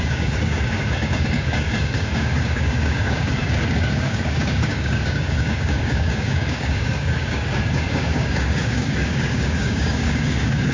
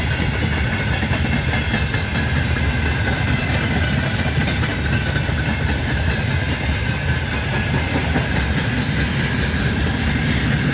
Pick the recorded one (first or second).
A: second